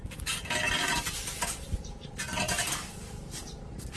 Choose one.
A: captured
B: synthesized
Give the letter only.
B